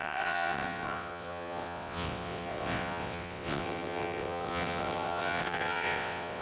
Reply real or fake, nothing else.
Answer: fake